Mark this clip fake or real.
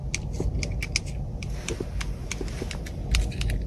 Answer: real